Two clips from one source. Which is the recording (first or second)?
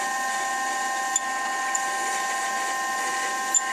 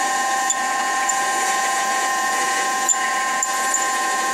first